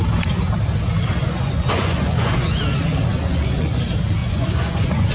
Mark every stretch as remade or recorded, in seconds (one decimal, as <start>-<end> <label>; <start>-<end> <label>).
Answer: 0.0-1.2 recorded; 1.2-2.6 remade; 2.6-3.1 recorded; 3.1-3.8 remade; 3.8-4.2 recorded; 4.2-5.1 remade